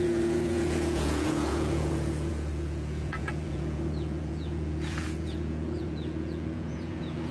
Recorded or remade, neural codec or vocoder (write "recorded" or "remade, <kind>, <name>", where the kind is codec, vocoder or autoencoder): remade, vocoder, Vocos